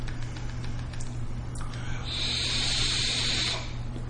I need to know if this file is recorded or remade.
recorded